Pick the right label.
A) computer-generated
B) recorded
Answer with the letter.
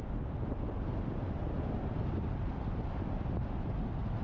B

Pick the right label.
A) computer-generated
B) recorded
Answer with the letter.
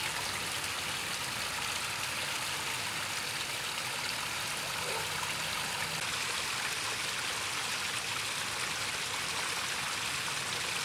B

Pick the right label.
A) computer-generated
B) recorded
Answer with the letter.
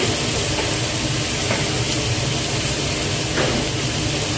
B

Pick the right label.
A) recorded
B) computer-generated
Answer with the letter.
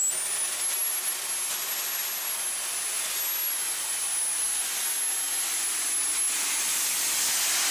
A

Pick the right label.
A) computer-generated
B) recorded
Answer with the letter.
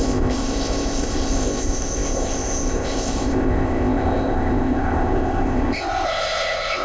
A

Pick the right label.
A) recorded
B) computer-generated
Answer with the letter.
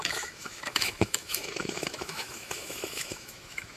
B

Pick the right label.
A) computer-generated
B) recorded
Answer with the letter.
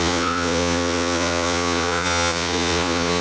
A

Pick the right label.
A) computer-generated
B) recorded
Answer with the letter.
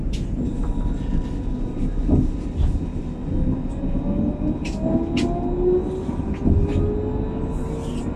B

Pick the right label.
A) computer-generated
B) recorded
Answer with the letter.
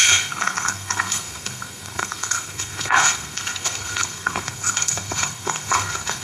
A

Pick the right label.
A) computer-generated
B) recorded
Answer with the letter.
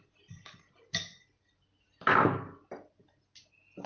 B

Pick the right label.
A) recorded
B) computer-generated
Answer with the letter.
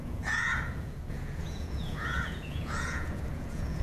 B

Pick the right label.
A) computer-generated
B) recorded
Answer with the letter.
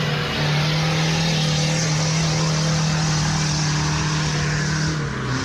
B